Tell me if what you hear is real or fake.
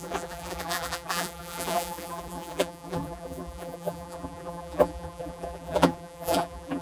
fake